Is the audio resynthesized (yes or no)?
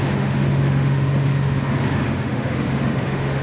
yes